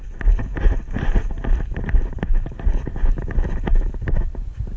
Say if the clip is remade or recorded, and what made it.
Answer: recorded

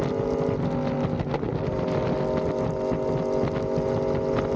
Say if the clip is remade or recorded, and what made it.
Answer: recorded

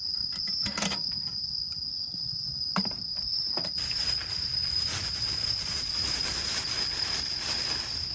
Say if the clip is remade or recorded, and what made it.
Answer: recorded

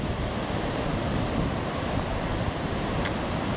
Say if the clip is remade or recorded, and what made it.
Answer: recorded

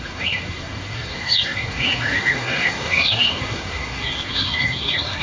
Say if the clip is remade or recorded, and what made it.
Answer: remade, codec, SNAC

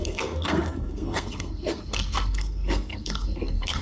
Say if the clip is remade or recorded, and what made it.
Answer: remade, codec, SNAC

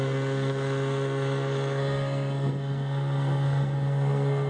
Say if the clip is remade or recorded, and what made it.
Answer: remade, codec, SNAC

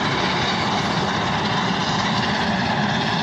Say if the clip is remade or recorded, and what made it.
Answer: recorded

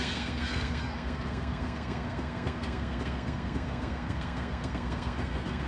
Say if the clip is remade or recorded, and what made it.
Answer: remade, codec, SNAC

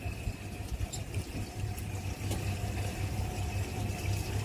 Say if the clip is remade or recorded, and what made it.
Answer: recorded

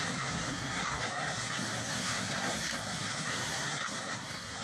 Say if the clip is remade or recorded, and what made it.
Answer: remade, codec, SNAC